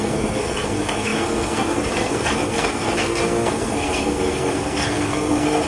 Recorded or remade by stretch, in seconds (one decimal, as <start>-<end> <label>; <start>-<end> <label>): 0.0-5.7 remade